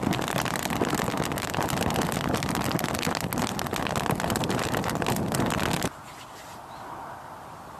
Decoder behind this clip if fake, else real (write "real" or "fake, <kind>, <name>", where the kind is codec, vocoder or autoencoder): real